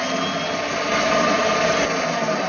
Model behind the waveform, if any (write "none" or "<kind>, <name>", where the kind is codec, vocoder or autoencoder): none